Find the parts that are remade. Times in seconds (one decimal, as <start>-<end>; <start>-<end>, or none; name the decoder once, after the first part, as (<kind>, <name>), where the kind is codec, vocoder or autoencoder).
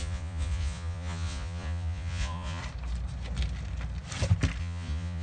0.0-2.6 (vocoder, Vocos); 4.6-5.2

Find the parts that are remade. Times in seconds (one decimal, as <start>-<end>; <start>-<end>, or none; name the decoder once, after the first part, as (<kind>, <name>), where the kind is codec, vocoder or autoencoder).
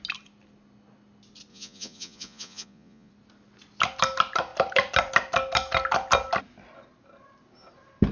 1.5-3.1 (vocoder, Vocos)